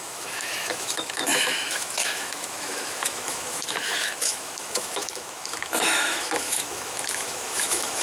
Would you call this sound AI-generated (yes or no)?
yes